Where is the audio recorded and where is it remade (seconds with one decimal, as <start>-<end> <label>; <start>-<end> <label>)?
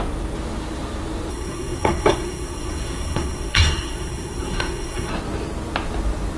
0.0-1.3 recorded; 1.3-5.1 remade; 5.1-6.4 recorded